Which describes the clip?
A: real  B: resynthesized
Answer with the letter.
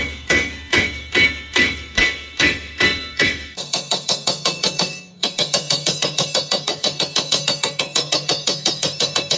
B